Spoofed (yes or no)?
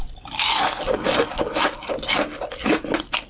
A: no